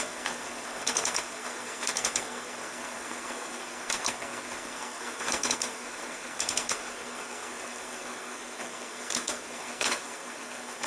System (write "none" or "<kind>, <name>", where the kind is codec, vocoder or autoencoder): codec, SNAC